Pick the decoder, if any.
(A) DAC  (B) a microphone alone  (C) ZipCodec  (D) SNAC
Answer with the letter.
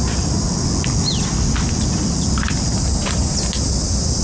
B